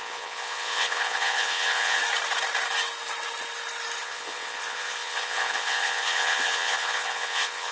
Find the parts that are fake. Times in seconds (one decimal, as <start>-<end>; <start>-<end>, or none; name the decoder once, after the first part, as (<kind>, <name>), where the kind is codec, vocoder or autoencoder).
0.0-2.0 (vocoder, WaveNeXt); 4.0-7.7